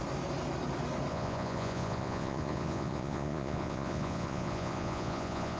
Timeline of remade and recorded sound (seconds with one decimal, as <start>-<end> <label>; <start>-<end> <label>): 0.0-1.1 recorded; 1.1-5.6 remade